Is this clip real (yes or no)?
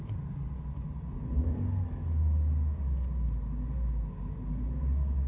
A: yes